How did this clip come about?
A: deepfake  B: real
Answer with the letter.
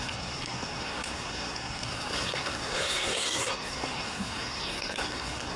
A